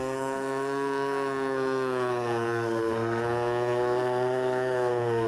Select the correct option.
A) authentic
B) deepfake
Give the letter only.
B